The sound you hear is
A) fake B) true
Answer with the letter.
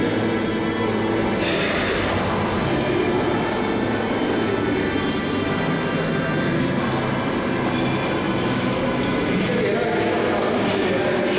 B